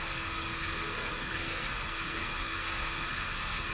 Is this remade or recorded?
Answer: remade